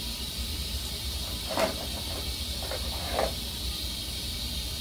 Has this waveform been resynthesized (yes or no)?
yes